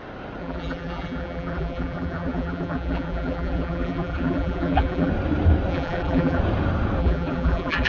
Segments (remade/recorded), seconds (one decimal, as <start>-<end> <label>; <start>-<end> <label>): 0.0-0.4 recorded; 0.4-5.1 remade; 5.1-5.7 recorded; 5.7-6.4 remade; 6.4-7.0 recorded; 7.0-7.9 remade